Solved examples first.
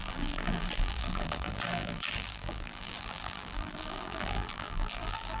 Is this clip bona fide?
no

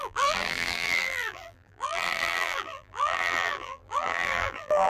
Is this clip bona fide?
no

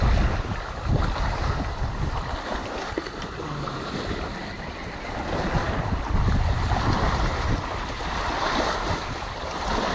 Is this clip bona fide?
no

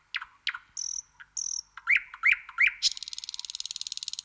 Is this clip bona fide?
yes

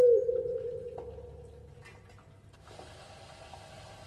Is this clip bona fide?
yes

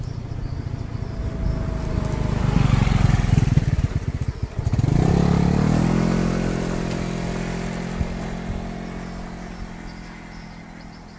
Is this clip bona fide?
yes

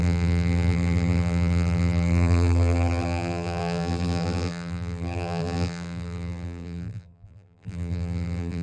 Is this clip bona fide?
no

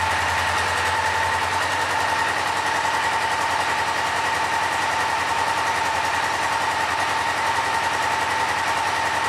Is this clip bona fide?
yes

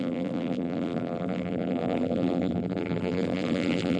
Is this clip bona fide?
no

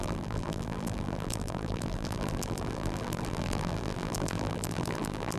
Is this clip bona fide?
no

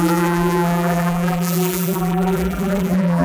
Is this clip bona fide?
no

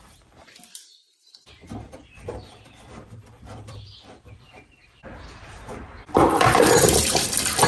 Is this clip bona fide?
no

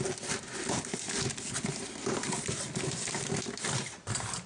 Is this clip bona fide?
yes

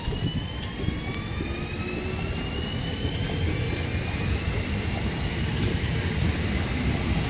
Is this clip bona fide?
yes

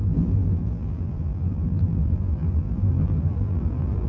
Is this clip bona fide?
no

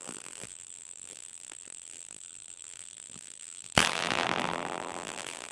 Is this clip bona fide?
no